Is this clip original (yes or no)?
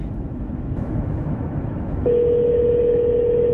no